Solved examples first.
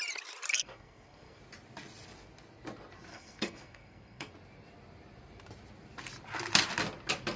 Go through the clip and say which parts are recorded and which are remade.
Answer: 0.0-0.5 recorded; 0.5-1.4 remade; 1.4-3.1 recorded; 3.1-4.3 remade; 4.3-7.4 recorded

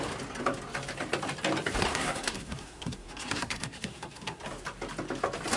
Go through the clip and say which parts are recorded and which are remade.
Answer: 0.0-1.9 recorded; 1.9-4.4 remade; 4.4-5.6 recorded

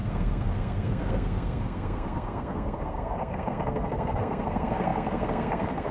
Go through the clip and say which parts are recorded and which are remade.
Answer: 0.0-5.9 remade

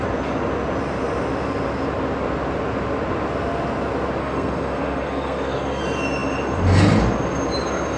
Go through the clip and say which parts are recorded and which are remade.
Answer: 0.0-4.2 recorded; 4.2-5.8 remade; 5.8-8.0 recorded

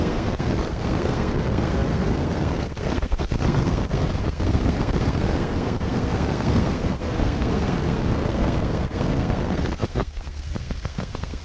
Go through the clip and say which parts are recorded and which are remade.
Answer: 0.0-11.4 remade

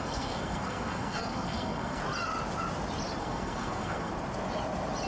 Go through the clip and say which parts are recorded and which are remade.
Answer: 0.0-2.0 remade; 2.0-3.2 recorded; 3.2-4.1 remade; 4.1-5.1 recorded

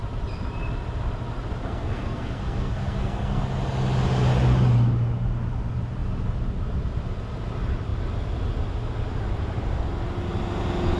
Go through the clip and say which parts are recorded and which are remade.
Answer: 0.0-1.6 recorded; 1.6-3.4 remade; 3.4-11.0 recorded